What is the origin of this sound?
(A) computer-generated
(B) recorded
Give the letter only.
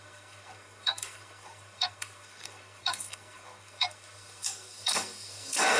A